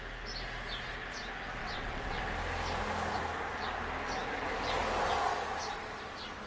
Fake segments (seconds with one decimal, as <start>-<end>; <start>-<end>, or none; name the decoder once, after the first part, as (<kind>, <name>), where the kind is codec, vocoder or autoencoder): 1.6-2.2 (vocoder, WaveNeXt)